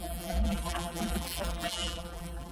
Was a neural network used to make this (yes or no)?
yes